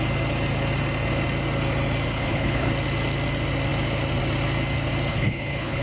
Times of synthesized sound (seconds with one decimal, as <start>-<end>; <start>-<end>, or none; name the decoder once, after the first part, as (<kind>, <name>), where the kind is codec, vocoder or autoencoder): 2.1-2.7 (codec, HILCodec); 5.1-5.8